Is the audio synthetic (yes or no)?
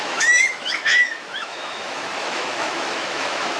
yes